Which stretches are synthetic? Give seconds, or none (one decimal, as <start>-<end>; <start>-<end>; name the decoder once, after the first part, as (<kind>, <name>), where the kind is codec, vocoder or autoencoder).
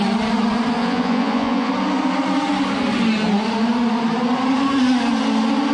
0.8-1.7 (vocoder, Vocos)